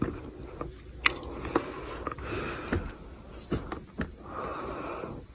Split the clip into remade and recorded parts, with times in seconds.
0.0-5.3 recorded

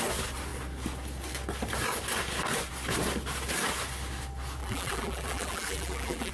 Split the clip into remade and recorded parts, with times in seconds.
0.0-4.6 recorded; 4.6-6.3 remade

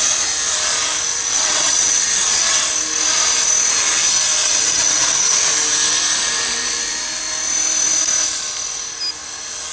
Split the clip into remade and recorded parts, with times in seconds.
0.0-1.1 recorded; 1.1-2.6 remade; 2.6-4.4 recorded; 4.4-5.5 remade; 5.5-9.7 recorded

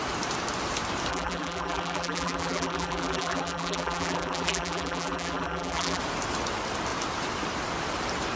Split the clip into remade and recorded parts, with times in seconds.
0.0-1.1 recorded; 1.1-6.0 remade; 6.0-8.4 recorded